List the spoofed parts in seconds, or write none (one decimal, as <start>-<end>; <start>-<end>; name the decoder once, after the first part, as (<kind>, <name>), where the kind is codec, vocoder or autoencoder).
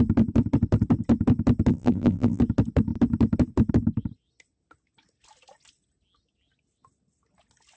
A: 1.7-2.4 (vocoder, BigVGAN v2)